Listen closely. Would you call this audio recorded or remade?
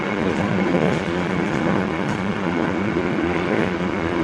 remade